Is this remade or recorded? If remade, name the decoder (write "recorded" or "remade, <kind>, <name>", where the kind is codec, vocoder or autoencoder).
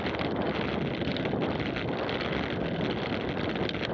recorded